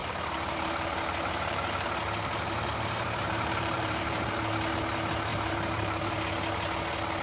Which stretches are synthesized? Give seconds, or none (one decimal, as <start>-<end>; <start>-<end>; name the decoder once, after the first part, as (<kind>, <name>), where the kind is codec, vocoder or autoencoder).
0.0-4.2 (vocoder, BigVGAN v2); 5.3-6.2